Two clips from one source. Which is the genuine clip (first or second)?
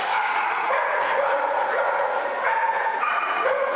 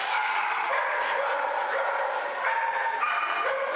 second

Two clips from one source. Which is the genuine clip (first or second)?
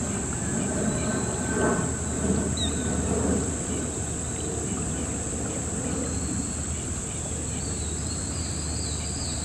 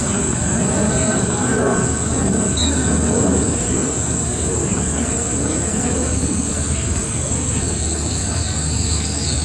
first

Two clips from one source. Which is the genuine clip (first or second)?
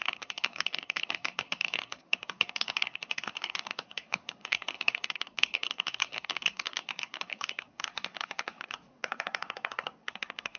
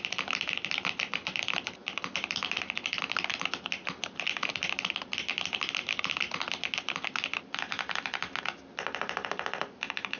second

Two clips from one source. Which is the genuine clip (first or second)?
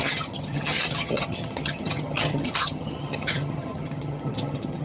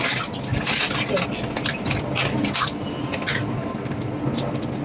second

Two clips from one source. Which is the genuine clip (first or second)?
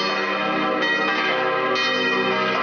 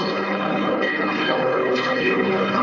first